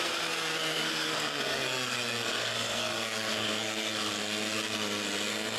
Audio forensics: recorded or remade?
remade